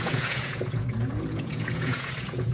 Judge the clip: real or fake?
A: fake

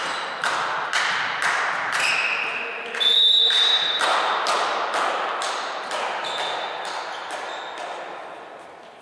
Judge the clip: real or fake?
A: real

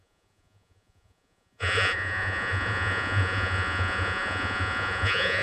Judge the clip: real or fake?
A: fake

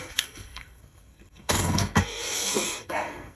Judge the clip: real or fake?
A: fake